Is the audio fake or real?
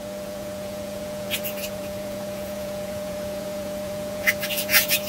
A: fake